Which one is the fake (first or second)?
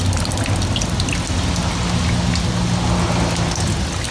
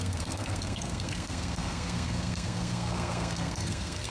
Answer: second